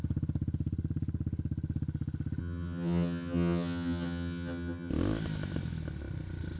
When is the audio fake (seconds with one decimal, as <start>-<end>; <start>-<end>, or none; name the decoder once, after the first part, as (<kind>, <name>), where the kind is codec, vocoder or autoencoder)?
2.4-4.9 (vocoder, HiFi-GAN)